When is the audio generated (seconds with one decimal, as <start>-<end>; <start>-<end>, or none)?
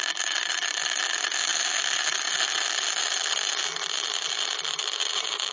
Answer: none